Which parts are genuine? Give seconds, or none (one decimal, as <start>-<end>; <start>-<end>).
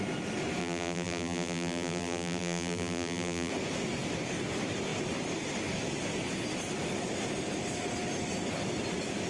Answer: 0.0-0.6; 3.5-9.3